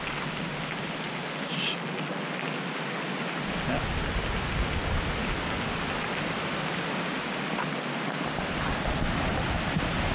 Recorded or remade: recorded